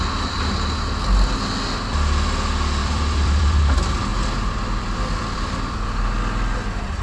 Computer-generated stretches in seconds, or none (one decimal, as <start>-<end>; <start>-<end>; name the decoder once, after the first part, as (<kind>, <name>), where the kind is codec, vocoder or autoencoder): 2.8-3.6 (vocoder, BigVGAN v2); 4.1-6.2